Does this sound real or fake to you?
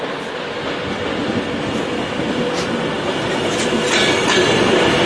real